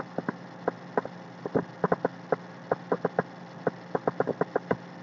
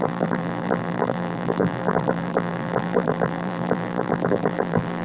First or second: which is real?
first